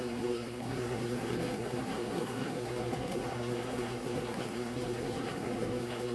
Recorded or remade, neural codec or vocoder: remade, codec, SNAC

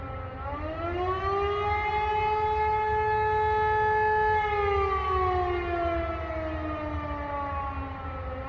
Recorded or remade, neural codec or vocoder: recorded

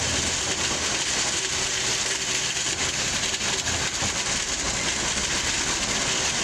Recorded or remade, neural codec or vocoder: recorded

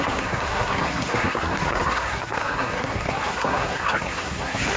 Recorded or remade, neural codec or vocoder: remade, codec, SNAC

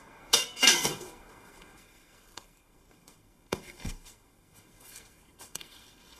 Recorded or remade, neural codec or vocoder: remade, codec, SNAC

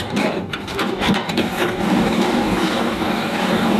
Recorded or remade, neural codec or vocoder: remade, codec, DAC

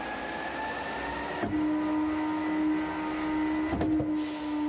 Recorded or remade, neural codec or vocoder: recorded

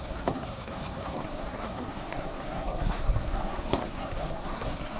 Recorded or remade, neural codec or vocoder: remade, codec, SNAC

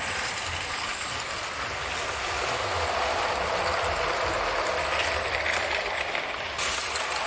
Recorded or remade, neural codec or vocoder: recorded